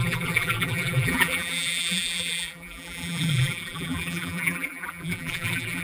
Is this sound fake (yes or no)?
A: yes